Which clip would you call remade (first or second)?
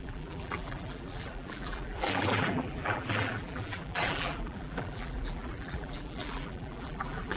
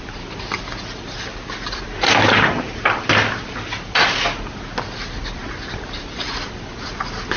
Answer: first